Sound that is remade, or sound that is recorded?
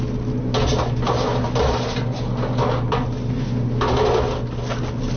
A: recorded